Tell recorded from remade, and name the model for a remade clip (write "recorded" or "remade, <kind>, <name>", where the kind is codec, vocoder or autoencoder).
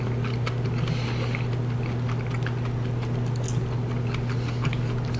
recorded